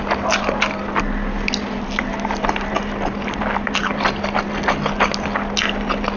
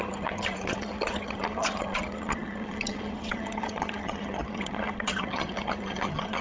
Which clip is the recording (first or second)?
first